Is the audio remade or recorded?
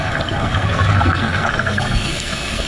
remade